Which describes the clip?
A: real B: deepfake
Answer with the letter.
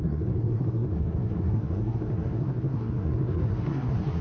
B